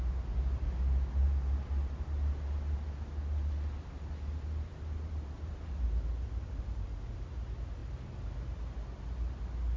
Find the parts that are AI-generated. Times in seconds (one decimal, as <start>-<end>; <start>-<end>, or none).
none